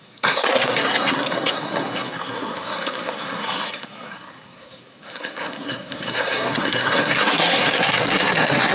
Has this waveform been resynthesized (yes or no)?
yes